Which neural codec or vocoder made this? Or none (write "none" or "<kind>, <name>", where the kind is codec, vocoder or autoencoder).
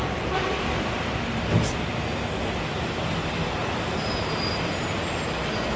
none